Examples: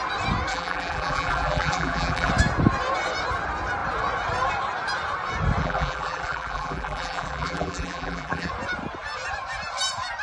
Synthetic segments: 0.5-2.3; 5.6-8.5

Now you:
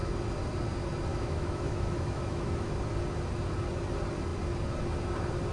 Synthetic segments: 1.1-2.7

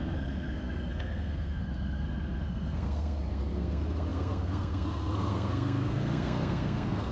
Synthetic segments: 0.0-7.1

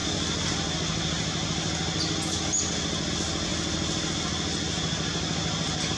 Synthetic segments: 3.5-4.1